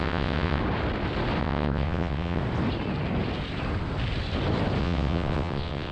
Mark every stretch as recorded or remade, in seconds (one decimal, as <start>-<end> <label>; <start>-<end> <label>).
0.0-0.6 remade; 0.6-1.4 recorded; 1.4-2.4 remade; 2.4-4.8 recorded; 4.8-5.9 remade

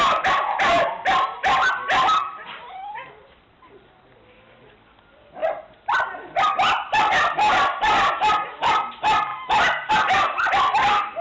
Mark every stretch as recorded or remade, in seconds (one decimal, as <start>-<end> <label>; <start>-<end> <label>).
0.0-2.2 recorded; 2.2-4.1 remade; 4.1-11.2 recorded

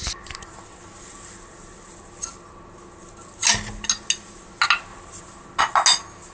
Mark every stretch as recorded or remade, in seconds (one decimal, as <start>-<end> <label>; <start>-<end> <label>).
0.0-6.3 recorded

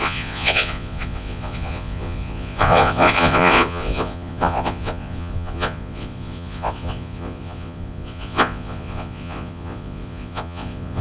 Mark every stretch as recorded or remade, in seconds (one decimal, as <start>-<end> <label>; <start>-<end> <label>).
0.0-11.0 remade